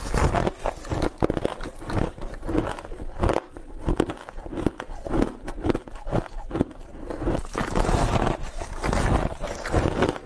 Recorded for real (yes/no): yes